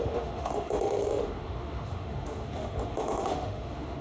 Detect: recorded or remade remade